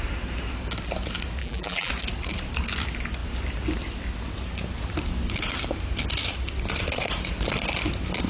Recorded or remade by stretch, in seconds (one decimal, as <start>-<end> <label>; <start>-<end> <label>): 0.0-1.4 recorded; 1.4-1.9 remade; 1.9-8.3 recorded